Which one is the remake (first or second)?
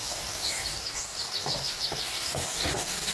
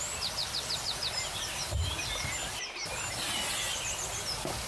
first